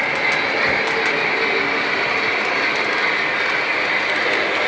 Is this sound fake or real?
real